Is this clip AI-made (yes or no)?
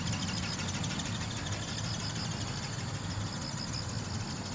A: no